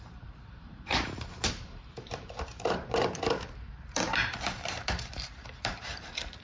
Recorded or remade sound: remade